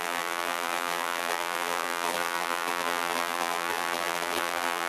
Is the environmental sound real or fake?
fake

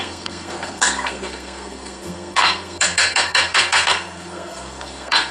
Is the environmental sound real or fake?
fake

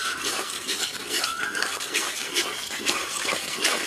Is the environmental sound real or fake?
fake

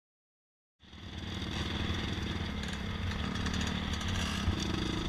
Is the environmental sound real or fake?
real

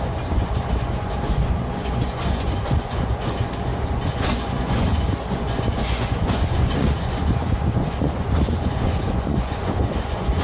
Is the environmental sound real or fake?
fake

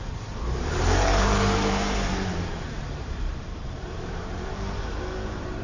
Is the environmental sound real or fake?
fake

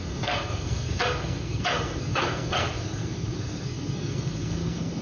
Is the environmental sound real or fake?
fake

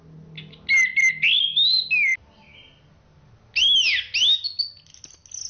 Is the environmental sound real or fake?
real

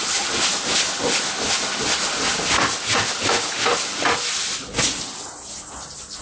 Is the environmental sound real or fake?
real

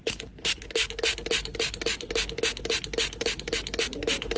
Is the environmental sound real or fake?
real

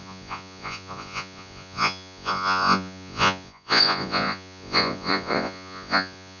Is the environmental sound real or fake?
fake